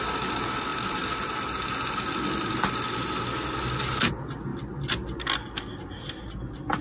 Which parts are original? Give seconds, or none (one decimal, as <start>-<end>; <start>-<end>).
0.0-6.8